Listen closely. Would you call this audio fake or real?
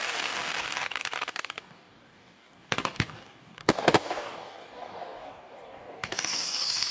fake